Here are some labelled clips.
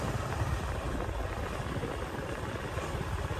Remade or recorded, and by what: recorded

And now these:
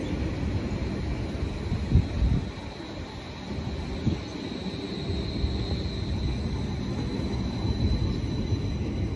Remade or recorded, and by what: recorded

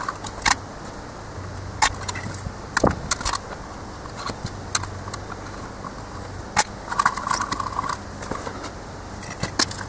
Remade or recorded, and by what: recorded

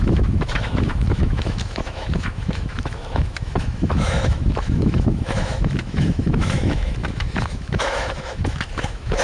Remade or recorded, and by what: remade, autoencoder, DAC-VAE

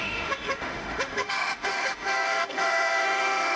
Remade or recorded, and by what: remade, autoencoder, DAC-VAE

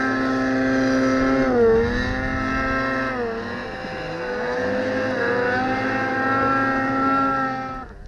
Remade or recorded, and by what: recorded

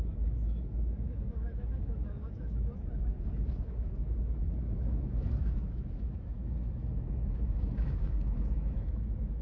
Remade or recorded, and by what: remade, autoencoder, DAC-VAE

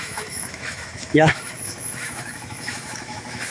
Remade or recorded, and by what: remade, autoencoder, DAC-VAE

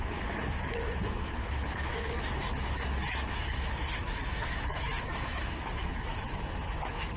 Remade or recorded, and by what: remade, autoencoder, DAC-VAE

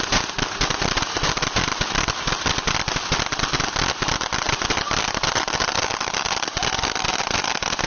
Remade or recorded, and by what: recorded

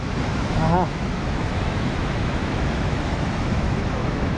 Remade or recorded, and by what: remade, autoencoder, DAC-VAE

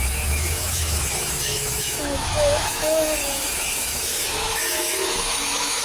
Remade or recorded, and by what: remade, autoencoder, DAC-VAE